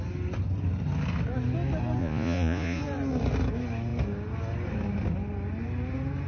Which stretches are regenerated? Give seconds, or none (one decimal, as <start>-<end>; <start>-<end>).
2.0-2.8